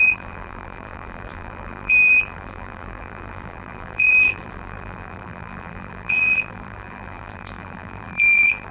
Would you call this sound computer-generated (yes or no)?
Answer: yes